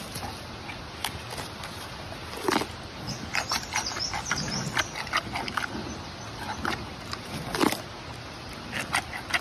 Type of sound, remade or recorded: recorded